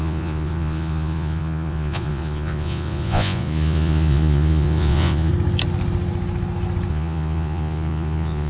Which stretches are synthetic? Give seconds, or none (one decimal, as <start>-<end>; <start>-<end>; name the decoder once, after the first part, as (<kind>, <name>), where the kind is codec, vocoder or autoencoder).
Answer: 0.0-5.3 (vocoder, Vocos); 6.9-8.5